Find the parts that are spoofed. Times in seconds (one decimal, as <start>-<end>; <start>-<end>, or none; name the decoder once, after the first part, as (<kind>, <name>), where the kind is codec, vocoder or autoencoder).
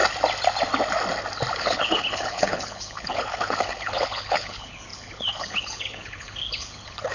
1.6-7.1 (codec, HILCodec)